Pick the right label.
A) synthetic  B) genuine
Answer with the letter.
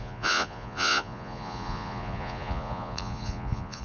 A